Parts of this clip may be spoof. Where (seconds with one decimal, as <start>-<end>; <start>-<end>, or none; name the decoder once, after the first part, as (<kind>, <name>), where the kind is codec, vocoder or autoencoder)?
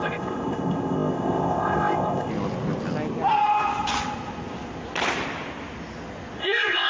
0.0-2.3 (codec, ZipCodec); 6.4-6.9